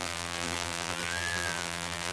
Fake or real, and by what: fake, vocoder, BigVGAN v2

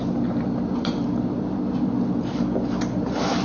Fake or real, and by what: fake, vocoder, BigVGAN v2